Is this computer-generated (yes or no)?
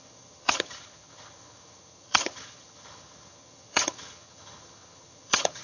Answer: yes